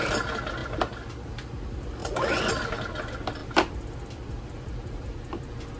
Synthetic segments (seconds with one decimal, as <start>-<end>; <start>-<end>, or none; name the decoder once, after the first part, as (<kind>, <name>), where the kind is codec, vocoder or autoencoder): 0.6-1.3 (vocoder, BigVGAN v2); 3.4-5.8